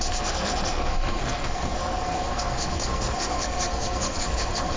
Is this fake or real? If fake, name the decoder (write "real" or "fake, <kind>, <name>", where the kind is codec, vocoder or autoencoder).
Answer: fake, codec, SNAC